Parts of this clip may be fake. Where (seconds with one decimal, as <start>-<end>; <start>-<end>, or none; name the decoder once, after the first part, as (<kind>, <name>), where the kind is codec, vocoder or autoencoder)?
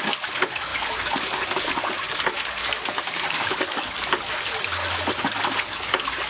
0.0-4.8 (codec, DAC); 5.5-6.3